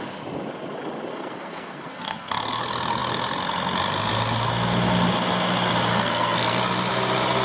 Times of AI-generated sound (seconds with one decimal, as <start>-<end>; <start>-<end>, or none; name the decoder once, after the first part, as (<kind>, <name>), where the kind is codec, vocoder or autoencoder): 1.1-2.6 (codec, SNAC); 5.9-6.6